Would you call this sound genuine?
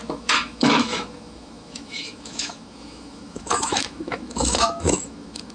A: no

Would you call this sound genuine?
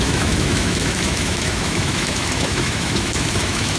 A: no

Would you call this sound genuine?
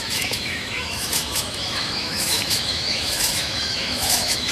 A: no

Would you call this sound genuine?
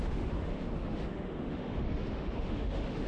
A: no